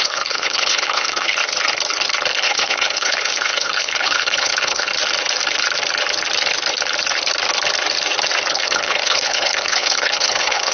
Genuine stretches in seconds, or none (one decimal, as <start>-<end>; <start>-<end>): 1.4-2.3; 4.9-8.5